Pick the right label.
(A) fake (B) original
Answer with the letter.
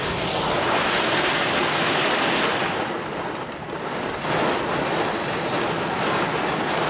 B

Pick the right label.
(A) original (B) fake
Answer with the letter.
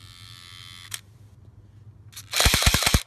A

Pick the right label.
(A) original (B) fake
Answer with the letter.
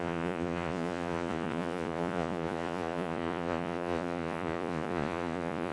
B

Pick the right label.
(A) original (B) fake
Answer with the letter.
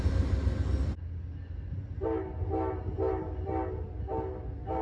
A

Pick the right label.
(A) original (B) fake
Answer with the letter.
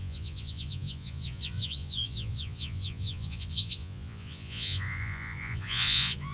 B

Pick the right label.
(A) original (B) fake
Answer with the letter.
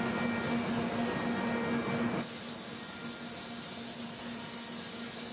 A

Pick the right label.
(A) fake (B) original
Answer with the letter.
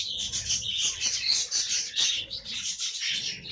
A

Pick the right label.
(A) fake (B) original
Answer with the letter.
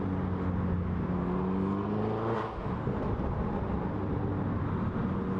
B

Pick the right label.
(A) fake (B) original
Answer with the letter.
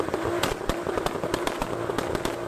B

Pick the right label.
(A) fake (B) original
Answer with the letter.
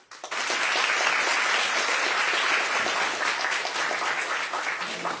B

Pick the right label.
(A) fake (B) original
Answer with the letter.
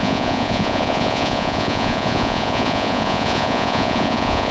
A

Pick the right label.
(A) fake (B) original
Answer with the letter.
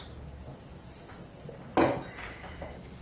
B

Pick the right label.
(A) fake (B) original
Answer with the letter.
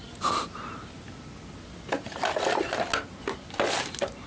B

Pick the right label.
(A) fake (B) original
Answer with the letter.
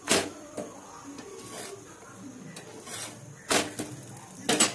B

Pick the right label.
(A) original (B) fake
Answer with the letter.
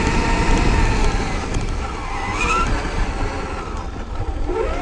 A